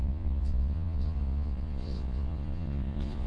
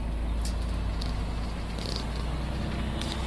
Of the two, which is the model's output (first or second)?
first